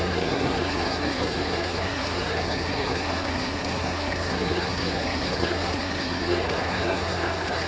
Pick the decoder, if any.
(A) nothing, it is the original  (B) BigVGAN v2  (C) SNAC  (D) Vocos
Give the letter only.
C